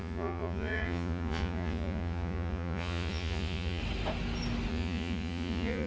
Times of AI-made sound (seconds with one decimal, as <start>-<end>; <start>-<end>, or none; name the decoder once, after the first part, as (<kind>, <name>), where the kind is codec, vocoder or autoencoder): 0.0-3.8 (vocoder, Vocos); 4.7-5.9